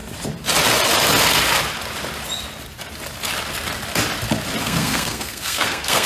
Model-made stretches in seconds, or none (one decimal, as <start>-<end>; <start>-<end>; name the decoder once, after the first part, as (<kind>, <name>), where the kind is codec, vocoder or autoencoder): 4.6-6.1 (codec, SNAC)